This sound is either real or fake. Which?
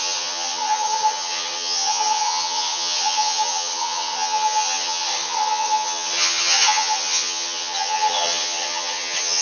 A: fake